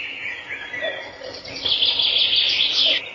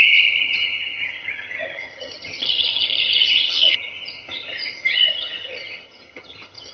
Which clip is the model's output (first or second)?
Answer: second